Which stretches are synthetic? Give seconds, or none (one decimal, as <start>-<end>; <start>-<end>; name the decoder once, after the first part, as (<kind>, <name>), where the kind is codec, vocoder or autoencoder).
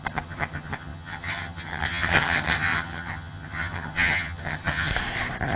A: 0.0-4.9 (vocoder, HiFi-GAN)